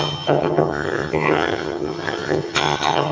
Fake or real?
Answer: fake